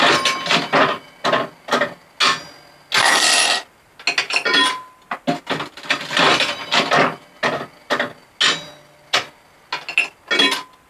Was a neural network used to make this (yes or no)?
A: no